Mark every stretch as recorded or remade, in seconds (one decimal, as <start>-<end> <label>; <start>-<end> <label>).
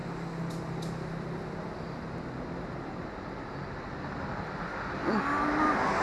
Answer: 0.0-6.0 recorded